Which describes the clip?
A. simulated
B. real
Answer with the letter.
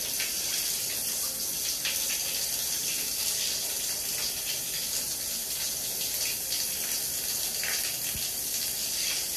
B